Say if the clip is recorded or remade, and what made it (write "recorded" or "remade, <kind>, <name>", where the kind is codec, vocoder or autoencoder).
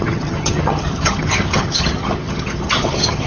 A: remade, vocoder, HiFi-GAN